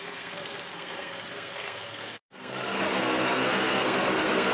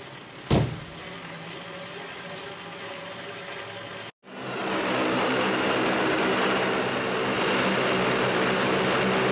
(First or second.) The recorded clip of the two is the second